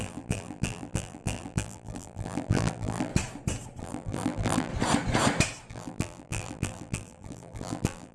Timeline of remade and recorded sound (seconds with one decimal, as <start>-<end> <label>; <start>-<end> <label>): 0.0-3.1 remade; 3.1-3.8 recorded; 3.8-4.7 remade; 4.7-5.7 recorded; 5.7-8.1 remade